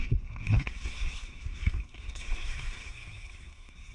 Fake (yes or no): yes